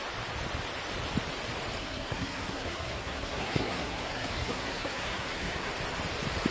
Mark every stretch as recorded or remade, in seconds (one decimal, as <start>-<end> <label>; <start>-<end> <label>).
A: 0.0-1.8 recorded; 1.8-5.7 remade; 5.7-6.5 recorded